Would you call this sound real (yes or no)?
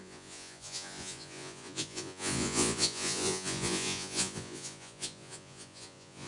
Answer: no